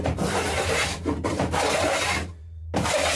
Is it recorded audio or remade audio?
remade